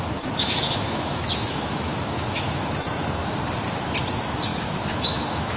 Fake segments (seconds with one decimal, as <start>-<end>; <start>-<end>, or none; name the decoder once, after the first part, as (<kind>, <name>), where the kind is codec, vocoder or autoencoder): 0.0-3.2 (autoencoder, DAC-VAE); 4.1-5.6